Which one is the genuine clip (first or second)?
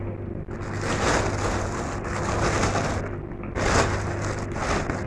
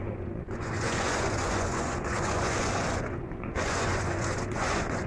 first